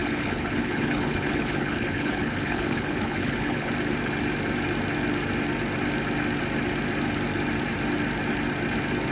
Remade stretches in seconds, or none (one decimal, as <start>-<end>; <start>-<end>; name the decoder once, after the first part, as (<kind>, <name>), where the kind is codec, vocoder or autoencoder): 0.0-3.7 (codec, HILCodec)